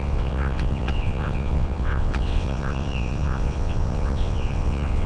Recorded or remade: remade